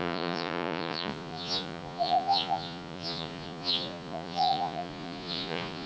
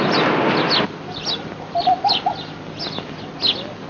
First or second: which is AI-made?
first